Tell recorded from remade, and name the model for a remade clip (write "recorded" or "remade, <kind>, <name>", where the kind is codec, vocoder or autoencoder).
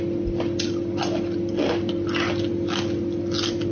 recorded